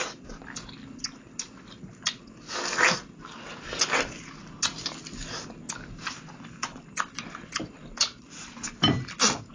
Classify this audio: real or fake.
real